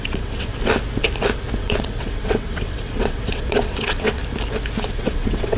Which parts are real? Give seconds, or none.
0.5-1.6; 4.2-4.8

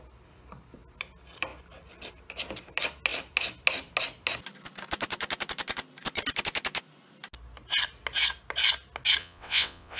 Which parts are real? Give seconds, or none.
0.0-9.2

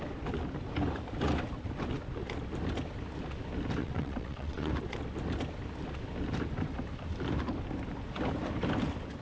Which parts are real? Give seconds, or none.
0.0-3.8; 4.7-9.2

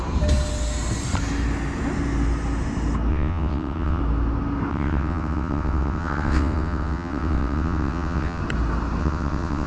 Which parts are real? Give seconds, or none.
0.0-3.1; 4.0-4.7; 8.4-9.0

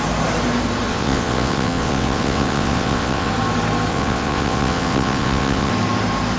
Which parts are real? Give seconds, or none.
0.0-0.9; 3.3-3.9; 5.7-6.4

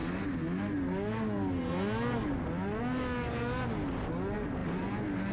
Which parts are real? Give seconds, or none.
0.0-5.3